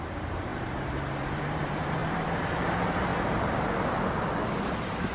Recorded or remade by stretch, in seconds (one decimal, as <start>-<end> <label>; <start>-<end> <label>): 0.0-3.1 remade; 3.1-5.1 recorded